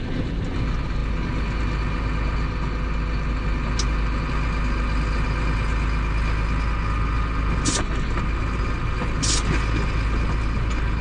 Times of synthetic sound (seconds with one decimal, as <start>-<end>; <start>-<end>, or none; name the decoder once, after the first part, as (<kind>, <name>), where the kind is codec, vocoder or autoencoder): none